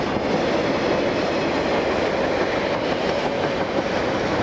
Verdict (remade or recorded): recorded